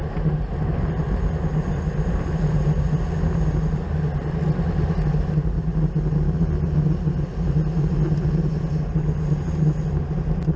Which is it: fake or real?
real